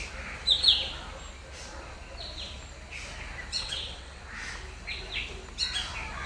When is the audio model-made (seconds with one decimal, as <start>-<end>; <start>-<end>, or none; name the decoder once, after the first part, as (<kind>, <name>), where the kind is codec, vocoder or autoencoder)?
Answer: 3.5-4.2 (vocoder, WaveNeXt)